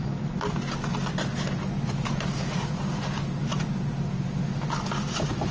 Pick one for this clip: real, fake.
real